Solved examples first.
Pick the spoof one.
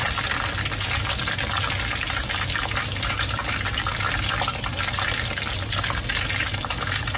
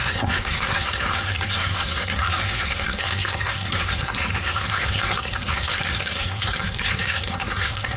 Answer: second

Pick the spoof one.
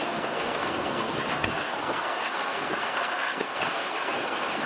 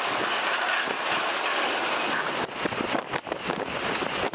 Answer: first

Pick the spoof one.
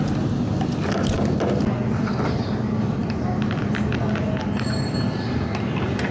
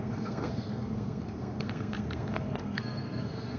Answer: second